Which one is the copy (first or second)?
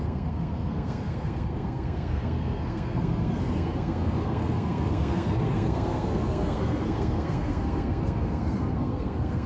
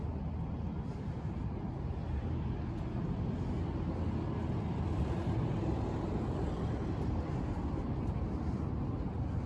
first